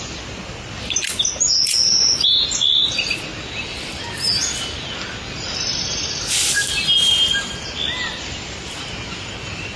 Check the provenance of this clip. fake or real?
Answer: real